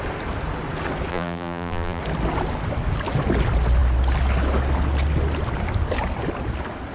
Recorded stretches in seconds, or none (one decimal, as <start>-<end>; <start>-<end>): 0.0-1.1; 2.0-6.9